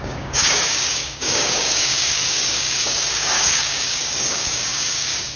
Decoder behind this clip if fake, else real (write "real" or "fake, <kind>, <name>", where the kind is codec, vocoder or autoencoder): fake, codec, DAC